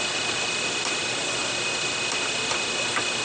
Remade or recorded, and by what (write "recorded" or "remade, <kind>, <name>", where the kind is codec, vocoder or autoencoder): recorded